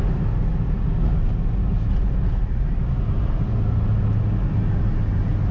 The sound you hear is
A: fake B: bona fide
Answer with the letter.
B